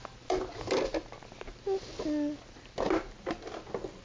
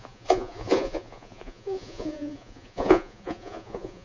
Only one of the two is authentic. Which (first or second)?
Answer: first